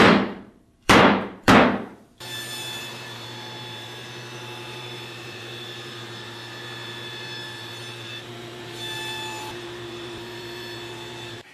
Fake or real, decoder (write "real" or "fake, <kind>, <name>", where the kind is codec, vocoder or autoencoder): fake, vocoder, BigVGAN v2